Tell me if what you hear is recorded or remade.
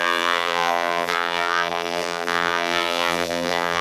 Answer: remade